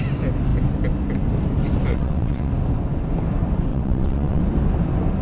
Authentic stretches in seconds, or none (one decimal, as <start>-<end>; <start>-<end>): 0.0-1.9; 2.5-3.7; 4.4-5.2